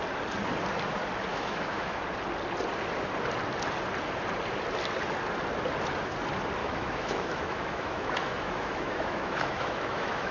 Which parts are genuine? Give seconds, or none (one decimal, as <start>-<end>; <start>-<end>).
0.0-1.3; 2.0-6.6